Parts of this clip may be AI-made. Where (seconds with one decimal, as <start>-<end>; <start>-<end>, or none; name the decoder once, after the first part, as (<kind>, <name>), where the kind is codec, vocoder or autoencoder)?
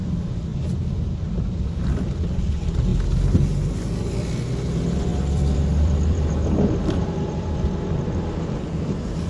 5.1-9.3 (vocoder, BigVGAN v2)